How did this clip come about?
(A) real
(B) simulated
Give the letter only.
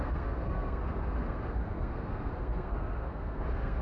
B